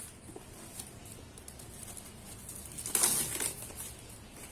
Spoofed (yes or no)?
no